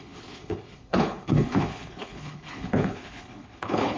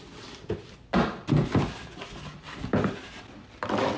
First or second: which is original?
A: second